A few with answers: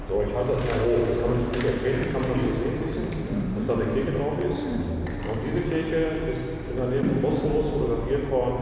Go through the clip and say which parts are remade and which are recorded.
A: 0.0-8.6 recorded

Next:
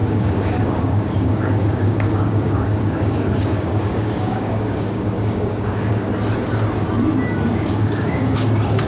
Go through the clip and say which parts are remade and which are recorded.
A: 0.0-6.1 remade; 6.1-7.5 recorded; 7.5-8.9 remade

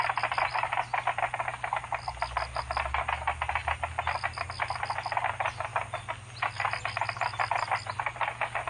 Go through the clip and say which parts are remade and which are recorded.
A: 0.0-8.7 recorded